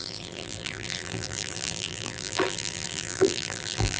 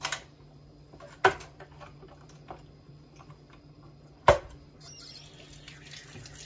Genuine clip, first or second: second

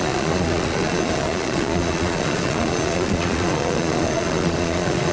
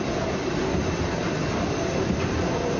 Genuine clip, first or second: second